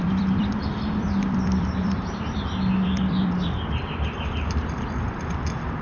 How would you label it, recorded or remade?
remade